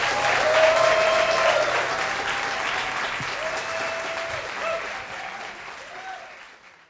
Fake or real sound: real